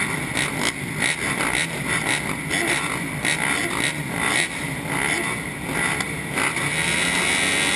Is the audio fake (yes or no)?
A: no